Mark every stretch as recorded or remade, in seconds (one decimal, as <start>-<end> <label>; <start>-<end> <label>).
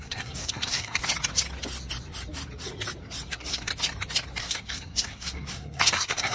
0.0-1.0 remade; 1.0-3.3 recorded; 3.3-3.7 remade; 3.7-4.4 recorded; 4.4-6.3 remade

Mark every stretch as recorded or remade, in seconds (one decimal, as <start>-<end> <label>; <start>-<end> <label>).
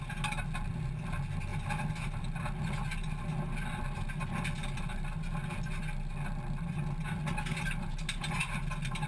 0.0-9.1 recorded